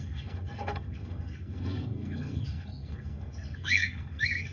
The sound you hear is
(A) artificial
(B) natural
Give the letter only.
A